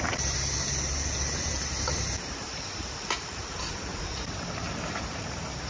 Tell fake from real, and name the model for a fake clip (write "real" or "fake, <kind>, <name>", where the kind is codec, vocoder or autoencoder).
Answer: fake, vocoder, BigVGAN v2